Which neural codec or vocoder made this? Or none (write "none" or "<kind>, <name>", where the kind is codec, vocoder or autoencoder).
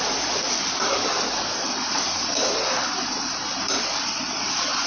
vocoder, BigVGAN v2